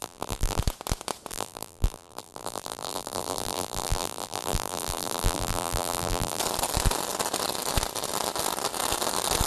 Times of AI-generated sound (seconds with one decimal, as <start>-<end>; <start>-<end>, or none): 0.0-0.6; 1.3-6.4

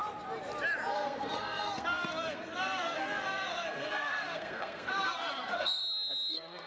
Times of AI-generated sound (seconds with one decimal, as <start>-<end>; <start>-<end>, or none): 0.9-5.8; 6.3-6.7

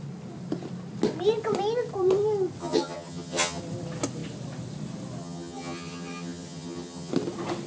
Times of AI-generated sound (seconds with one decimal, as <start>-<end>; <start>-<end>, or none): 2.6-3.6; 5.2-7.1